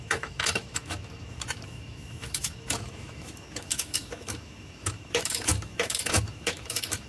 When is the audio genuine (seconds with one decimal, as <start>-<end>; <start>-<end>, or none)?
none